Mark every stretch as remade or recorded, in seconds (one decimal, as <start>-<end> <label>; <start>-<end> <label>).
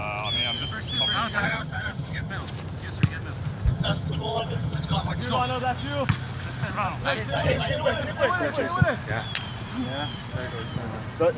0.0-1.4 recorded; 1.4-2.3 remade; 2.3-3.7 recorded; 3.7-5.2 remade; 5.2-7.3 recorded; 7.3-8.2 remade; 8.2-11.4 recorded